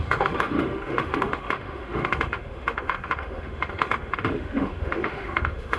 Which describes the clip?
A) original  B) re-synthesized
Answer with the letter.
B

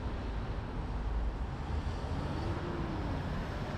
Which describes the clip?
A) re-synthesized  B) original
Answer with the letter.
B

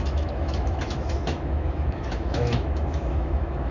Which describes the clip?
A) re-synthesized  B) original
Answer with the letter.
A